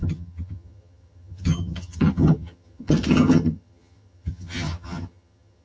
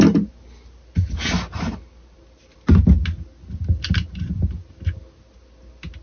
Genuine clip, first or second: second